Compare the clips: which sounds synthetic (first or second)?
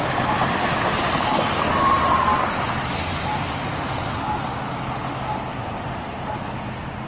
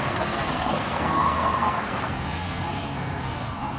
second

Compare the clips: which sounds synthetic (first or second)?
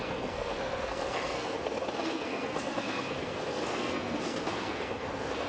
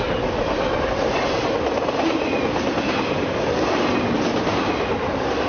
first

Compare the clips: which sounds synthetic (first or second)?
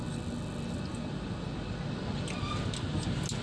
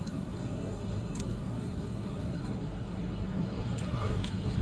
second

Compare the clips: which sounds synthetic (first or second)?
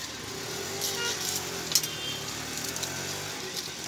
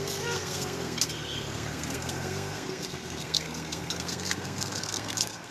second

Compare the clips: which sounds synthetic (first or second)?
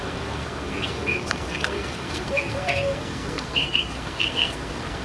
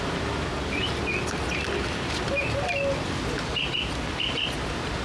first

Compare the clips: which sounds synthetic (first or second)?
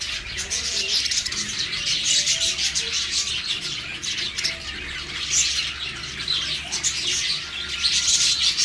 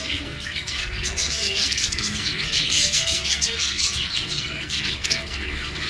second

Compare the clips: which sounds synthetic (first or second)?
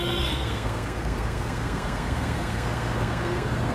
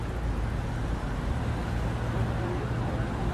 first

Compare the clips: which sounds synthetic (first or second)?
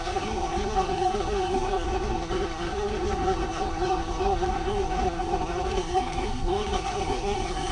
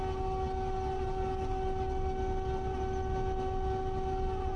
first